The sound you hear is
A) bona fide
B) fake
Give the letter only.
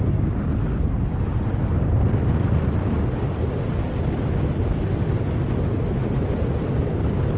A